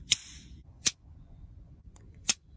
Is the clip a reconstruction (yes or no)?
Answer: yes